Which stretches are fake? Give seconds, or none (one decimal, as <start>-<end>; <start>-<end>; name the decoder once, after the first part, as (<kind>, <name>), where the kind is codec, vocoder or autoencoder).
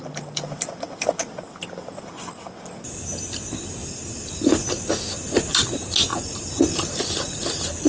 none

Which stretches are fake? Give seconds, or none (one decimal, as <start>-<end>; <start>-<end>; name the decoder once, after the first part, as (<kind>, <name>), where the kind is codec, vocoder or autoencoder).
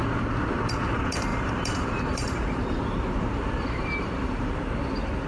1.3-4.5 (vocoder, BigVGAN v2)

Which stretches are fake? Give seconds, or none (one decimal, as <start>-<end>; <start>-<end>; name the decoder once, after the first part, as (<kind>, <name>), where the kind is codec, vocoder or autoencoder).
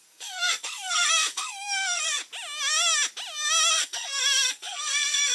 0.0-2.2 (codec, SNAC); 3.7-5.3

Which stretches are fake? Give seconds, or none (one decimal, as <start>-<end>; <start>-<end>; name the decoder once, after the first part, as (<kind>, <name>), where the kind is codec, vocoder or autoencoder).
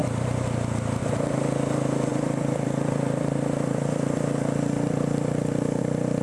0.0-1.0 (vocoder, BigVGAN v2); 2.1-5.8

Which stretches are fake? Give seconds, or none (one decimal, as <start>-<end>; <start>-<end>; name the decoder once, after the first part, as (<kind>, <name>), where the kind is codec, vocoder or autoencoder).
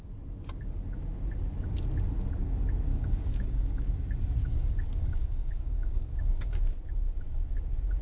2.9-3.8 (codec, DAC); 4.4-6.6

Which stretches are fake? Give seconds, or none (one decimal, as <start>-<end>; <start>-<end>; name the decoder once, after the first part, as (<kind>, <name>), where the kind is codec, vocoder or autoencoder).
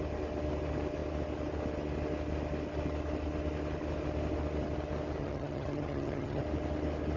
5.2-6.4 (vocoder, HiFi-GAN)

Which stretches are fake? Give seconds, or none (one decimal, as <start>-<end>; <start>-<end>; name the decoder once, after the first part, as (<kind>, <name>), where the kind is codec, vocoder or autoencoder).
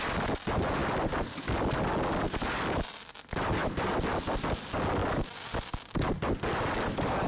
none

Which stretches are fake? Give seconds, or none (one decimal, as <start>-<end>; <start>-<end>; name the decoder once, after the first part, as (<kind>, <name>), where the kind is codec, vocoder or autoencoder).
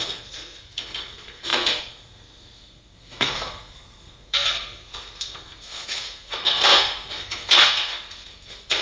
0.0-8.8 (codec, SNAC)